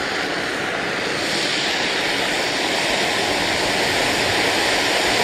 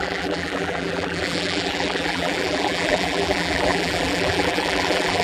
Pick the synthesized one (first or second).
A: second